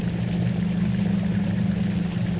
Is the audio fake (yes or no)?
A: no